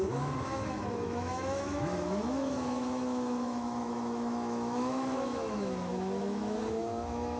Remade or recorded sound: remade